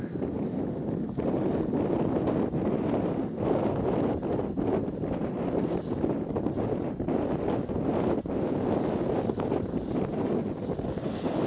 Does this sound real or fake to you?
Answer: real